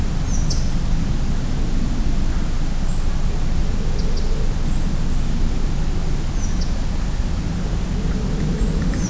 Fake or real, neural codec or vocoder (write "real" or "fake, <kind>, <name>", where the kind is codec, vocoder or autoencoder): real